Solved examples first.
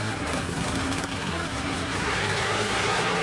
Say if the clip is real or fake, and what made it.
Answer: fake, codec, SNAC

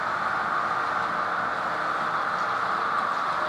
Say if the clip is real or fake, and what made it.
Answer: real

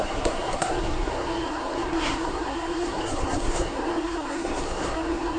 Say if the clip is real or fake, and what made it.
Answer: fake, codec, SNAC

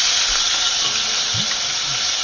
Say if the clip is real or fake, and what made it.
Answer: real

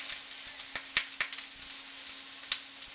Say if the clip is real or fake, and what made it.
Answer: real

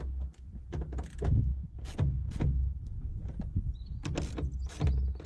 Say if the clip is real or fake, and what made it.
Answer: real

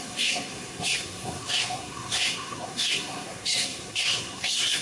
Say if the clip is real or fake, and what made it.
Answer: fake, codec, SNAC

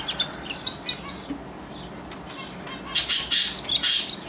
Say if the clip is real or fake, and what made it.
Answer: real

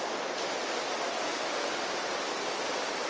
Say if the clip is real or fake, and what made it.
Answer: real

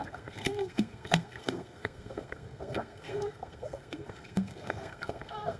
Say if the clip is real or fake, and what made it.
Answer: fake, codec, SNAC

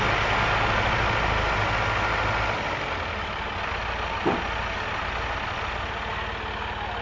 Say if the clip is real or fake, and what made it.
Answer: real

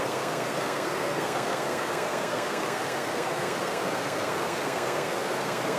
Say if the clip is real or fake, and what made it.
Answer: fake, codec, SNAC